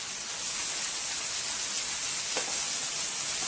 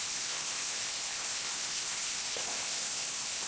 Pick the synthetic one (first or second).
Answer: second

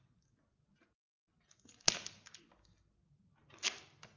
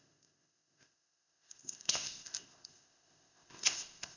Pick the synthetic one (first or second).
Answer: second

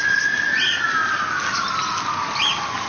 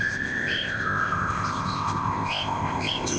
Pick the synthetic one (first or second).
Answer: second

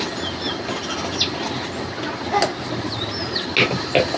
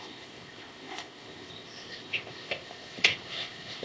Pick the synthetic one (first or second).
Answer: second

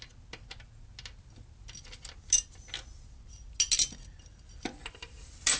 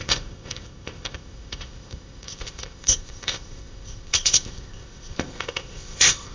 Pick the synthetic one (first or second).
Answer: second